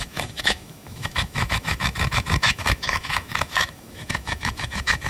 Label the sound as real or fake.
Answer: fake